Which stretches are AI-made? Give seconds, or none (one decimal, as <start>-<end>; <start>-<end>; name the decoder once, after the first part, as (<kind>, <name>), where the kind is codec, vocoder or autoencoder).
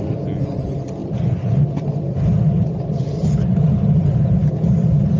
none